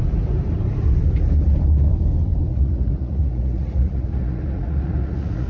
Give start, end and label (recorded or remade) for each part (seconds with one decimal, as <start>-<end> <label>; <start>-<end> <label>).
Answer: 0.0-2.5 recorded; 2.5-5.5 remade